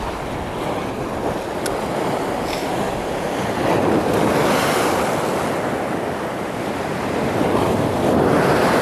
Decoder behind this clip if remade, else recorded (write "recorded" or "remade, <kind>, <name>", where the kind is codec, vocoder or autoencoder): recorded